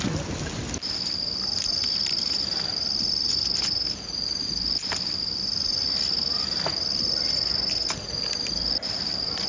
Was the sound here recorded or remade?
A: recorded